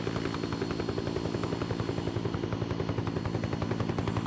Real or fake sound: real